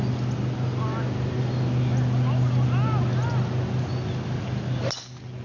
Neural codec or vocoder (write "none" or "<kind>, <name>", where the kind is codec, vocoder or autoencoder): none